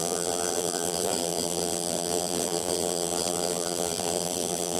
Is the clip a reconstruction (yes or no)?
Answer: yes